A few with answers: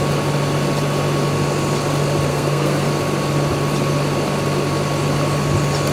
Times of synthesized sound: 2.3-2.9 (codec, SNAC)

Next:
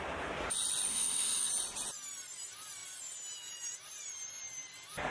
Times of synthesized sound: 0.9-1.5 (autoencoder, DAC-VAE)